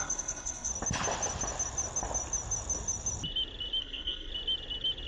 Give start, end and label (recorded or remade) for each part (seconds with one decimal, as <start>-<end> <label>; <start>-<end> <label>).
0.0-0.7 remade; 0.7-3.8 recorded; 3.8-4.3 remade; 4.3-5.1 recorded